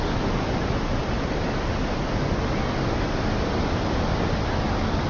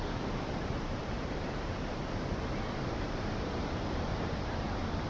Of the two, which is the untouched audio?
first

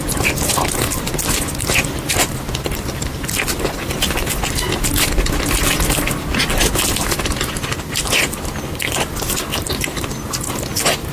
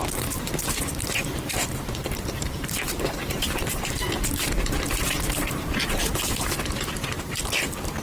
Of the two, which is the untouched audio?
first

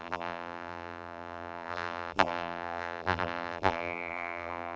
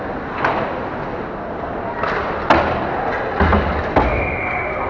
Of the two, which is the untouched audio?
second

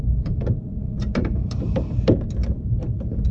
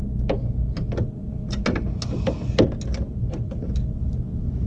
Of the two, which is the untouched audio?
second